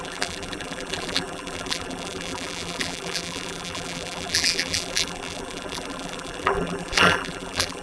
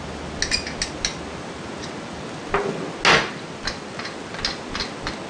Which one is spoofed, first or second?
first